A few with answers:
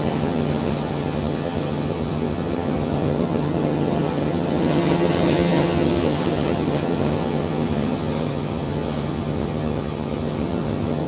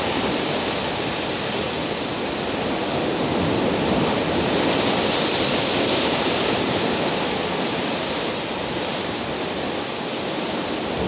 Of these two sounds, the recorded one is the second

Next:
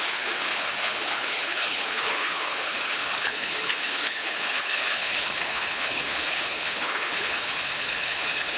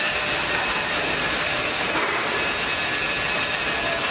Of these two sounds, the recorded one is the second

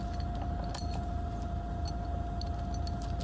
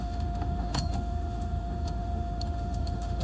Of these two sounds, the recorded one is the first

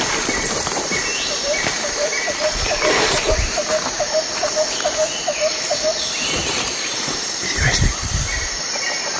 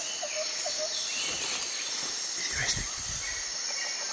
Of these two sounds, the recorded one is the second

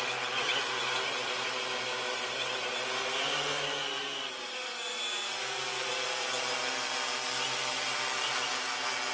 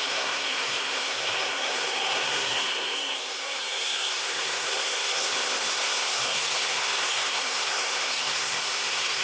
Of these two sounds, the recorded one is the first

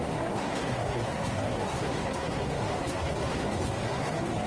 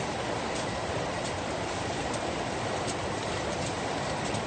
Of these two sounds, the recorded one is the second